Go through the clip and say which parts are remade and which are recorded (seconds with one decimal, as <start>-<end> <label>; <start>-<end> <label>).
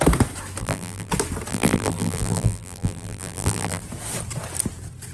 0.0-0.6 recorded; 0.6-1.1 remade; 1.1-1.5 recorded; 1.5-3.8 remade; 3.8-5.1 recorded